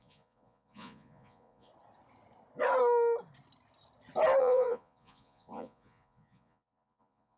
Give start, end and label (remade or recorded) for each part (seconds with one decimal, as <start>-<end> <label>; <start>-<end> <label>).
0.0-1.7 remade; 1.7-4.4 recorded; 4.4-7.4 remade